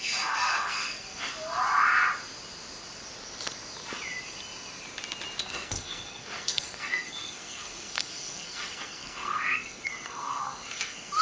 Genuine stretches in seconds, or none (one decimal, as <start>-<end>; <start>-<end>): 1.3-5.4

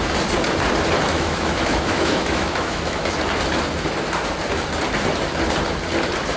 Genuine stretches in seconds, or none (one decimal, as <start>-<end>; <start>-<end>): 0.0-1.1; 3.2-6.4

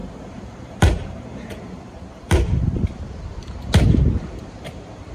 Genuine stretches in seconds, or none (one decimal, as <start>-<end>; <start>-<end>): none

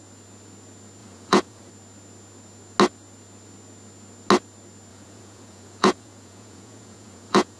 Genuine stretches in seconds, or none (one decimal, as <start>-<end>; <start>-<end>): 0.0-1.0; 1.7-4.9

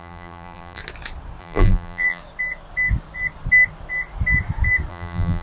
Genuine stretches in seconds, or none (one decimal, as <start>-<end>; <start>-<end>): 0.8-1.4; 2.2-4.9

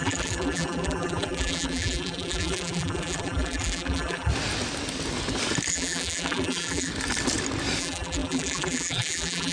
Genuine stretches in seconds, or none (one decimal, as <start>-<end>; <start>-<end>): 4.3-5.7; 6.9-7.8